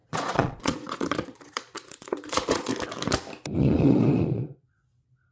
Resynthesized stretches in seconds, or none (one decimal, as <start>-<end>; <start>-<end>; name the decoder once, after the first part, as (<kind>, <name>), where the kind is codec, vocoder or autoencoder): 0.0-2.7 (vocoder, Vocos); 3.5-5.3